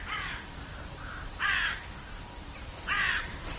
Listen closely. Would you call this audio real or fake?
fake